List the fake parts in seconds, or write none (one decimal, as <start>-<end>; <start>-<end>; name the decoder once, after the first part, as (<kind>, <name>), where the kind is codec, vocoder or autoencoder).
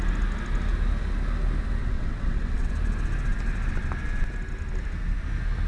1.8-2.7 (vocoder, WaveNeXt)